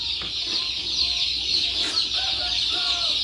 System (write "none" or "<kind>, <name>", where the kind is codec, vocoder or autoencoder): none